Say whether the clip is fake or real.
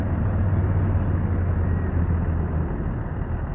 real